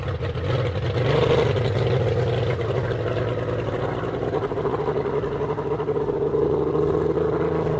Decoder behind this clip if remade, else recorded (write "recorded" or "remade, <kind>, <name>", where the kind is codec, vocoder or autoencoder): recorded